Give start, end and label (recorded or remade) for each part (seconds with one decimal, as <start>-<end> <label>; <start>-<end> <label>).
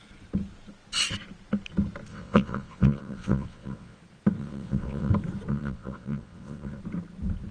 0.0-2.1 recorded; 2.1-4.0 remade; 4.0-4.4 recorded; 4.4-5.1 remade; 5.1-5.5 recorded; 5.5-6.8 remade; 6.8-7.5 recorded